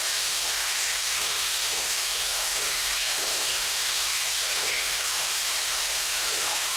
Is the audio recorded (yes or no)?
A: no